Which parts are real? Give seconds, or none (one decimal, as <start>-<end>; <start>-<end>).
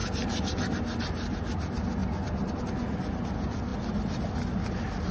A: 0.0-5.1